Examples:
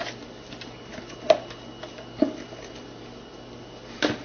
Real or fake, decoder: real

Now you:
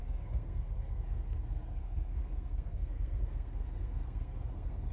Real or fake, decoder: fake, codec, SNAC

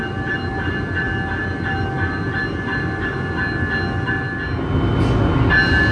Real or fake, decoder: real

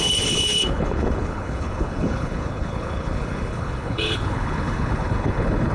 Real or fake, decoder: fake, codec, HILCodec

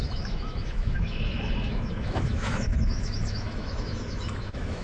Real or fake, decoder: fake, autoencoder, DAC-VAE